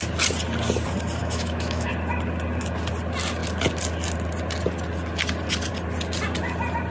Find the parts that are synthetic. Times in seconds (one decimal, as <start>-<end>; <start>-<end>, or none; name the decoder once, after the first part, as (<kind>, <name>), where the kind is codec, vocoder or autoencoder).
1.2-1.9 (autoencoder, DAC-VAE)